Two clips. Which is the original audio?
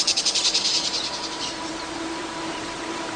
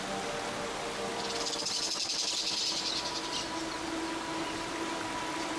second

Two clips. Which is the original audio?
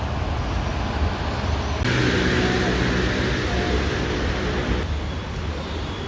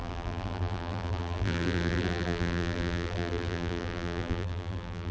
first